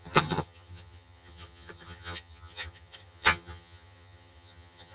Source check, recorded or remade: remade